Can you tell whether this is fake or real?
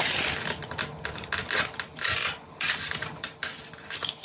real